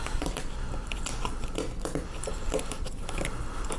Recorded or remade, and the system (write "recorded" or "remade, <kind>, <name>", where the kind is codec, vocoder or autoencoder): remade, vocoder, BigVGAN v2